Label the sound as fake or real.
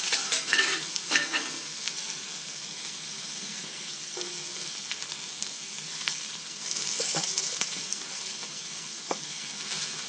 fake